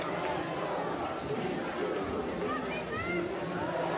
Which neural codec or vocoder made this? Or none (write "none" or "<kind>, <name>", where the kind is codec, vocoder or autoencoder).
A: none